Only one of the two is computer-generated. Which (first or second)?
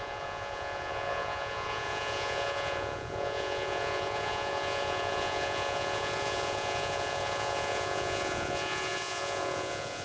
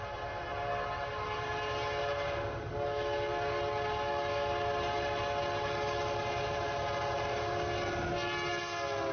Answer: first